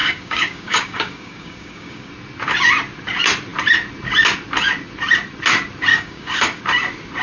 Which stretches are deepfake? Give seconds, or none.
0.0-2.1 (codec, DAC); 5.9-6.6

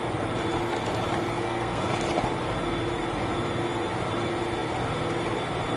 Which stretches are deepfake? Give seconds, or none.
1.3-1.8 (codec, SNAC)

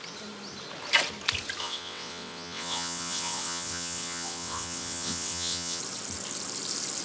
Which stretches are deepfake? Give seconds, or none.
1.6-5.8 (vocoder, WaveNeXt)

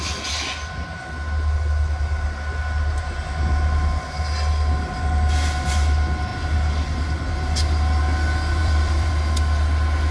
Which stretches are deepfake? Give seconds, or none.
8.6-9.1 (vocoder, BigVGAN v2)

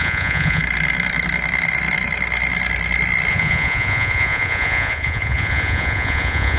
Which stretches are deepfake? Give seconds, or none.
0.0-0.6 (vocoder, Vocos); 3.3-6.6

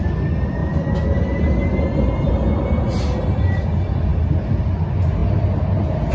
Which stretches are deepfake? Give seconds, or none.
none